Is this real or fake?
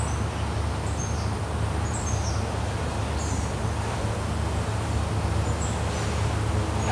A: real